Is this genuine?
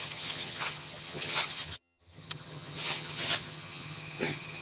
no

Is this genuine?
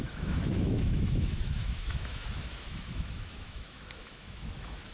no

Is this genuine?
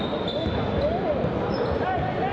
yes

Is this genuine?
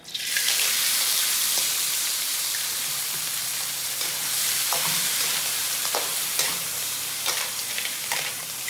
no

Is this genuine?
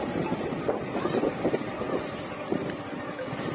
yes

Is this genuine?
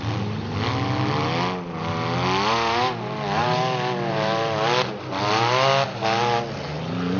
yes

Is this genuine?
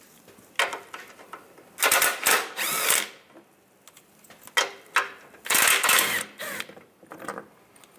yes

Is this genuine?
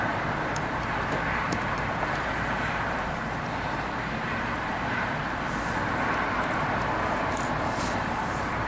no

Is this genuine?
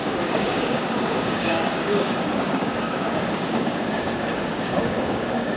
no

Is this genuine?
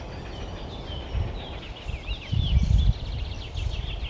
yes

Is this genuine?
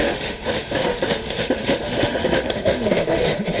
no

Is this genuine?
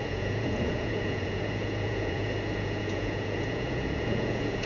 no